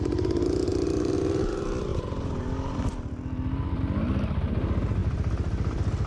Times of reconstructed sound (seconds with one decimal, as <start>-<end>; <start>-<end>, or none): 0.7-1.5; 1.9-3.8